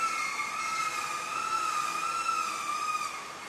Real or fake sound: real